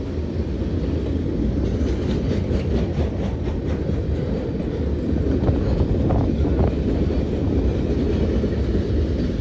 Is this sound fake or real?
real